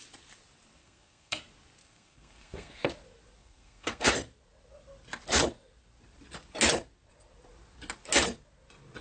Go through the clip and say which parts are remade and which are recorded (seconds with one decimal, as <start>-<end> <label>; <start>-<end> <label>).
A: 0.0-0.8 recorded; 0.8-1.4 remade; 1.4-1.8 recorded; 1.8-2.8 remade; 2.8-3.4 recorded; 3.4-4.1 remade; 4.1-9.0 recorded